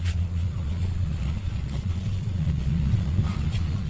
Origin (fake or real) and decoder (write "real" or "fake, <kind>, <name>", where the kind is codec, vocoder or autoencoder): fake, vocoder, Vocos